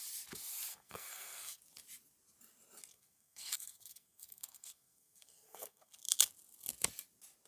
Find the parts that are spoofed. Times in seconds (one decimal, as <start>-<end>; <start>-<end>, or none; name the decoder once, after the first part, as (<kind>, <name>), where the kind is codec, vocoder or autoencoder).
0.7-1.6 (codec, SNAC); 2.9-5.9